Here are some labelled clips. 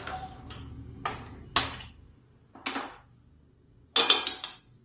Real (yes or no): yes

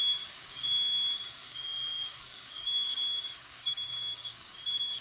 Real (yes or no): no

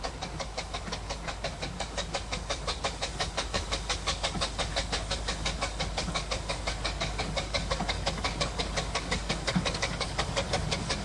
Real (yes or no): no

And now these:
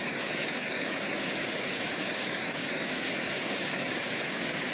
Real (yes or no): no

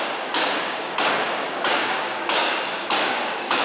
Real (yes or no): no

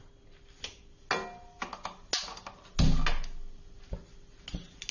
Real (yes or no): yes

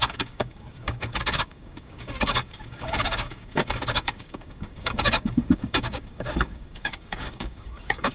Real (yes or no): no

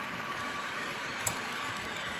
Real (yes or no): no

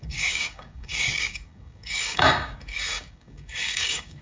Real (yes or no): no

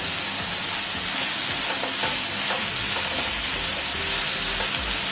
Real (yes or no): yes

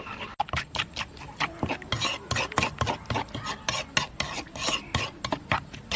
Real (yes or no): yes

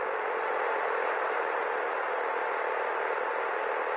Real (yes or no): yes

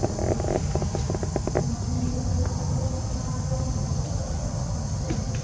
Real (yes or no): yes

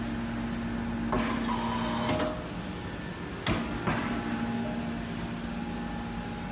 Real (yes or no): yes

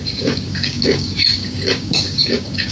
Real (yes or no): no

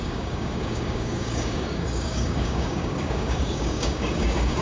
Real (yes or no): no